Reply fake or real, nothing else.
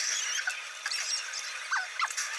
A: real